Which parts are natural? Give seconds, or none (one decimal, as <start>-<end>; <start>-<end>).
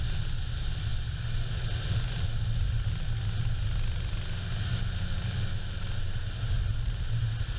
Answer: 0.0-7.6